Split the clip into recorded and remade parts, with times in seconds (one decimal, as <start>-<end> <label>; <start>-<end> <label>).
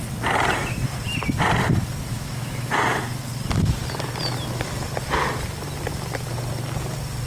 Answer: 0.0-2.1 recorded; 2.1-2.7 remade; 2.7-7.3 recorded